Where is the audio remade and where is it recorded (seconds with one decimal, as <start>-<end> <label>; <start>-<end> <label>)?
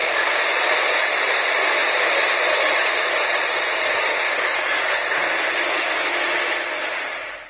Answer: 0.0-7.5 recorded